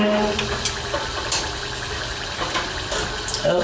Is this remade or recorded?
recorded